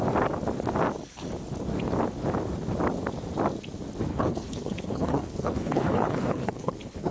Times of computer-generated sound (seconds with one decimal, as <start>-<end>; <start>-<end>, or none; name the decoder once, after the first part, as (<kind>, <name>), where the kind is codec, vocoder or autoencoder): 4.1-7.1 (codec, HILCodec)